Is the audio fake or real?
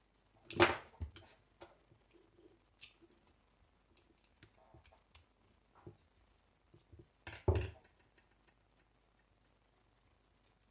real